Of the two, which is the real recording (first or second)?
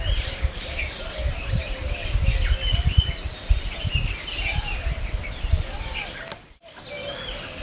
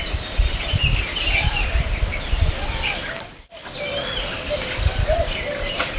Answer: first